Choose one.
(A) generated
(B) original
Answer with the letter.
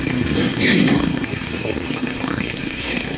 A